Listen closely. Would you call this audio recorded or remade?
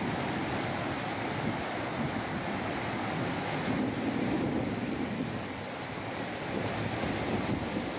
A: recorded